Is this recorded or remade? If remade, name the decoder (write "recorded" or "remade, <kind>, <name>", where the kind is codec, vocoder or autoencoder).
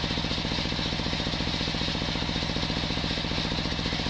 recorded